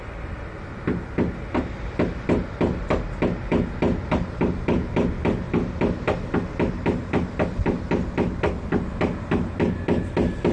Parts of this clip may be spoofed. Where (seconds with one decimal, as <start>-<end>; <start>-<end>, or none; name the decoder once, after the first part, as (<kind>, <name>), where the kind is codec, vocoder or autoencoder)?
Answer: none